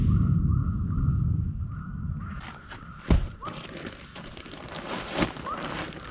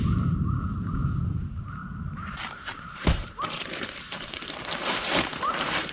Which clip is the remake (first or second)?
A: second